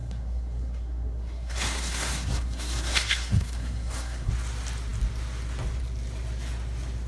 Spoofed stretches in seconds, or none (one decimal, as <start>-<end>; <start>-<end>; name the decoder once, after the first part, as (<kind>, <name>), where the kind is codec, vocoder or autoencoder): 0.0-4.3 (codec, SNAC)